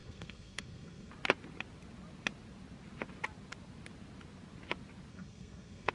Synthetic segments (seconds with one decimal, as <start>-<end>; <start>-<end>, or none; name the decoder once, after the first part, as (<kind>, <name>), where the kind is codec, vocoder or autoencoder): 0.0-1.1 (codec, SNAC); 5.1-5.9